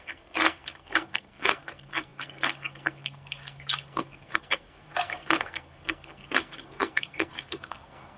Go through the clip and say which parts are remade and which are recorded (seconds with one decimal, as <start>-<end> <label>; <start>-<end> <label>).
0.0-8.2 remade